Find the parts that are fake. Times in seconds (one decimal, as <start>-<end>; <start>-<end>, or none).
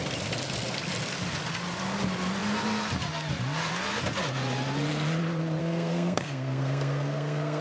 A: 5.6-7.6